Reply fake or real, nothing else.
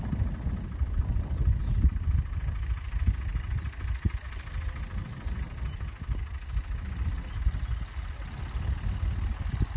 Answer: real